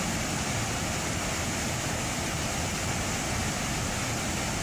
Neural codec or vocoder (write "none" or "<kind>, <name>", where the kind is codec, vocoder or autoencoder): vocoder, BigVGAN v2